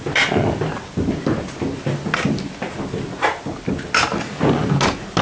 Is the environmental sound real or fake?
real